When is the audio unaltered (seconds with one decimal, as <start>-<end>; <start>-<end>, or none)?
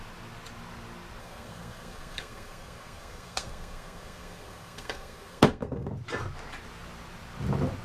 0.0-1.2; 5.9-7.8